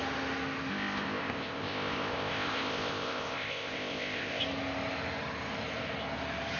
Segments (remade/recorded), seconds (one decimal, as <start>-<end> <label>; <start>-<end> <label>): 0.0-0.7 recorded; 0.7-4.4 remade; 4.4-6.6 recorded